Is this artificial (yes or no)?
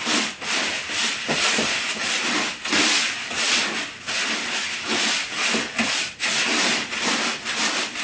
yes